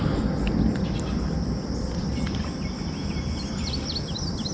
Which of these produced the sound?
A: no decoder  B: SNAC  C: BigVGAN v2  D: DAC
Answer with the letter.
A